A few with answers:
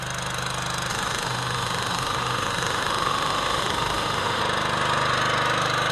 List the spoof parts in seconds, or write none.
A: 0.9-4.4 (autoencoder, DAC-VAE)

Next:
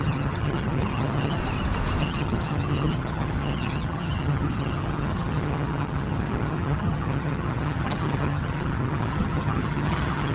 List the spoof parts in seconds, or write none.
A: 0.0-1.4 (vocoder, HiFi-GAN); 2.0-10.3

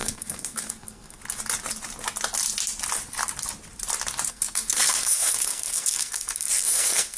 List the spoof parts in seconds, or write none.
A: 0.0-1.2 (codec, SNAC); 4.3-7.2

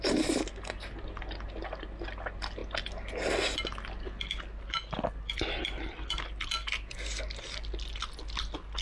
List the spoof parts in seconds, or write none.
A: none